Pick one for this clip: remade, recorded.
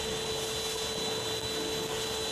recorded